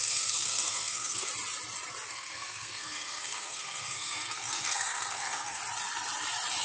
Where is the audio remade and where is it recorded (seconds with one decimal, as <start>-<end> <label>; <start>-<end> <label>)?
0.0-1.3 remade; 1.3-2.1 recorded; 2.1-5.6 remade; 5.6-6.6 recorded